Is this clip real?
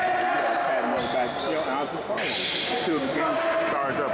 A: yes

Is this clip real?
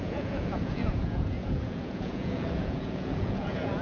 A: no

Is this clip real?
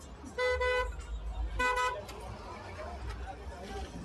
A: yes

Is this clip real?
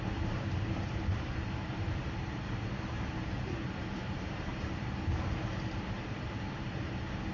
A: no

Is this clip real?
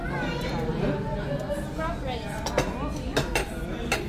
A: yes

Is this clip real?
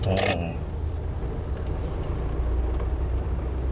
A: yes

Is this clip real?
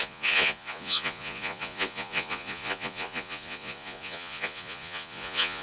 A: no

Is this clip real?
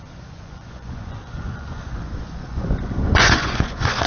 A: no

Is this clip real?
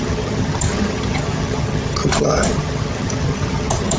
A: no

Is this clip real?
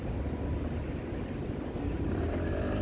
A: yes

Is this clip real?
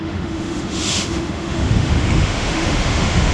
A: no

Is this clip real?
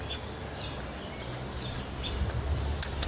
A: yes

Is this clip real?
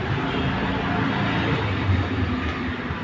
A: yes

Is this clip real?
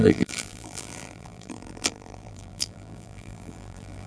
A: no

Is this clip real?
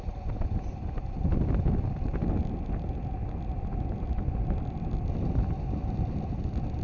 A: yes